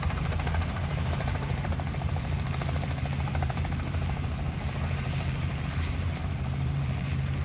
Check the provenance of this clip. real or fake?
fake